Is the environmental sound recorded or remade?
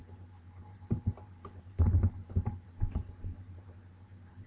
remade